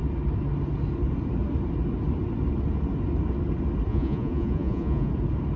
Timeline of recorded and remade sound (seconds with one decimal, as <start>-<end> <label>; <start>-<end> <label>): 0.0-3.9 recorded; 3.9-5.1 remade; 5.1-5.6 recorded